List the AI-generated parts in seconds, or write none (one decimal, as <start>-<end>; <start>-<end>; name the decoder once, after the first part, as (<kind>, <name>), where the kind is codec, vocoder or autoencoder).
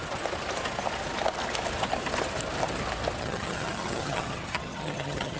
3.2-5.4 (vocoder, HiFi-GAN)